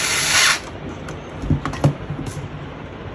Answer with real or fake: real